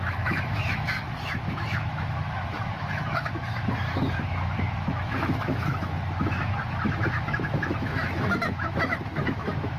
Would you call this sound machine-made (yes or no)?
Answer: yes